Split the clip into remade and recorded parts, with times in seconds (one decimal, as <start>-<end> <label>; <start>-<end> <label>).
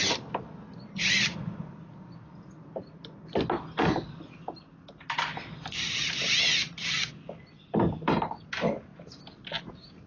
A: 0.0-10.1 recorded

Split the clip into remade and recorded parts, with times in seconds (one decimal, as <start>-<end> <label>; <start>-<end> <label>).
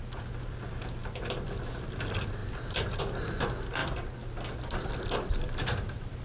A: 0.0-6.2 recorded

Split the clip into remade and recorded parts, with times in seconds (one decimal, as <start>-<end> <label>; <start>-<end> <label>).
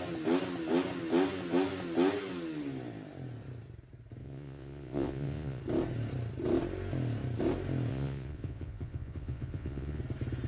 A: 0.0-4.2 recorded; 4.2-5.6 remade; 5.6-7.9 recorded; 7.9-10.0 remade; 10.0-10.5 recorded